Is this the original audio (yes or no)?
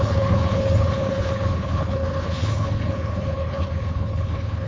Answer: no